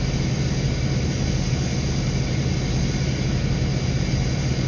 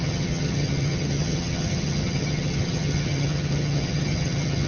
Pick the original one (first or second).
first